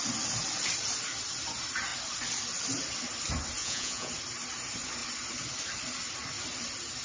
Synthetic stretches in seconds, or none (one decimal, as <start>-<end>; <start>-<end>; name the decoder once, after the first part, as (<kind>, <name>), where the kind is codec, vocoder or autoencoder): 3.6-4.1 (vocoder, Vocos)